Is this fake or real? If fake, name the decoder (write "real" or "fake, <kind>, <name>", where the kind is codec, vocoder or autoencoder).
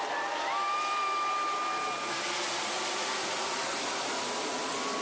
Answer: real